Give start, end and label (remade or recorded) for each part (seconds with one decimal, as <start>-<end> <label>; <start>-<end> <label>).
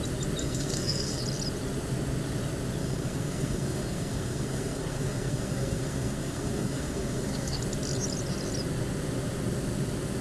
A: 0.0-0.4 recorded; 0.4-1.2 remade; 1.2-2.8 recorded; 2.8-7.6 remade; 7.6-10.2 recorded